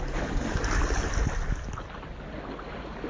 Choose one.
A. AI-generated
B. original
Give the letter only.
B